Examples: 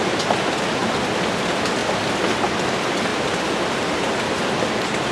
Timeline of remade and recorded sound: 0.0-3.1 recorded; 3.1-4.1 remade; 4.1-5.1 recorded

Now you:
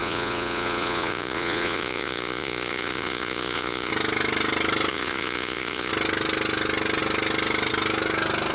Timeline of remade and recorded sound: 0.0-3.9 remade; 3.9-4.9 recorded; 4.9-5.9 remade; 5.9-8.5 recorded

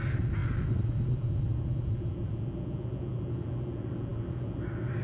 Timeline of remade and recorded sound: 0.0-5.0 recorded